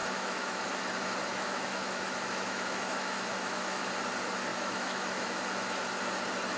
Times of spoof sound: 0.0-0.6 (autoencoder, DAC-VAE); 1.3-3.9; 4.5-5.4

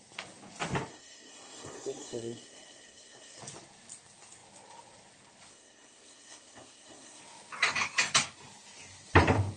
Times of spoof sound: 0.9-3.4 (codec, SNAC); 5.5-7.2

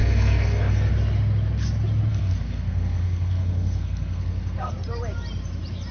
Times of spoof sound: 0.0-0.9 (codec, SNAC); 2.1-4.7

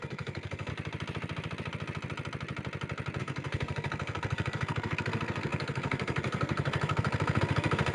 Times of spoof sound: 0.0-0.7 (codec, SNAC); 3.2-7.9